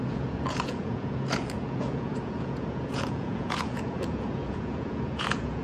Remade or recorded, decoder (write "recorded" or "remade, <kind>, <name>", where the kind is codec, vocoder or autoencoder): remade, vocoder, Vocos